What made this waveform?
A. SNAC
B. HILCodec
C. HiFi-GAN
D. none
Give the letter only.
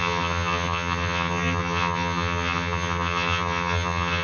C